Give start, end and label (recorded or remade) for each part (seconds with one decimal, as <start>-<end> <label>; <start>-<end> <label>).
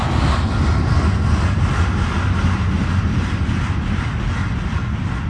0.0-5.3 recorded